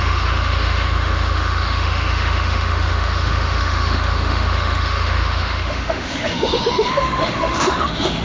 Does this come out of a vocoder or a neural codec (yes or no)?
yes